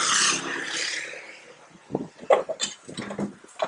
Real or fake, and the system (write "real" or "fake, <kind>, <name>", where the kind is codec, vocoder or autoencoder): real